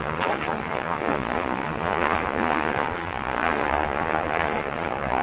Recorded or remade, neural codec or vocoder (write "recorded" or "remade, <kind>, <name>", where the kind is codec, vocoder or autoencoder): remade, vocoder, Vocos